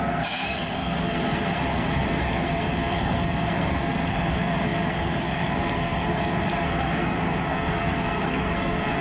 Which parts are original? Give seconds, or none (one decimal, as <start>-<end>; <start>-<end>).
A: none